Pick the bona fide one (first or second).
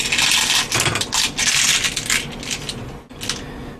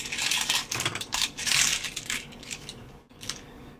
first